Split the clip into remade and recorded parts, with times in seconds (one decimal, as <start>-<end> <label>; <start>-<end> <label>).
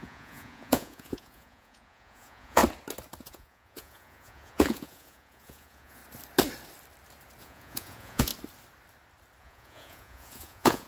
0.0-2.6 remade; 2.6-3.2 recorded; 3.2-6.0 remade; 6.0-7.4 recorded; 7.4-8.3 remade; 8.3-9.4 recorded; 9.4-10.9 remade